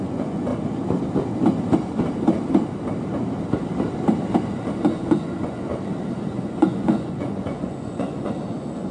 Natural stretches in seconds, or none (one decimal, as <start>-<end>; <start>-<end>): 0.5-4.8; 5.7-6.3